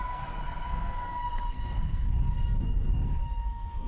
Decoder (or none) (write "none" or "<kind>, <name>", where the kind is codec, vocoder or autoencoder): codec, SNAC